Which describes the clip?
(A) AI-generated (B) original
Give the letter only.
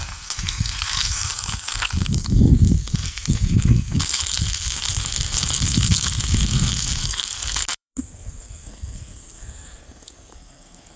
A